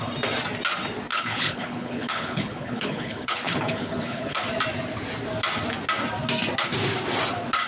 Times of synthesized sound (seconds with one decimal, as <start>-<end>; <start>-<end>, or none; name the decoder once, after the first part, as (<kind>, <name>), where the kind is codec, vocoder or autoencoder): 1.1-4.4 (codec, HILCodec)